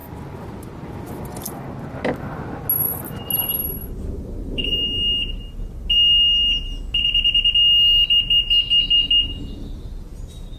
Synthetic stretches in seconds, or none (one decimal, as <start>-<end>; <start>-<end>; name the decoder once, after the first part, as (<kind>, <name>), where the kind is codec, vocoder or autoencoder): none